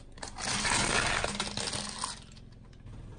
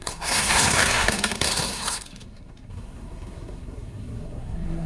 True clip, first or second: first